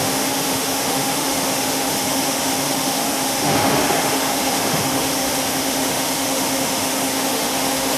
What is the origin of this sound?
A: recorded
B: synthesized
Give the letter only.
B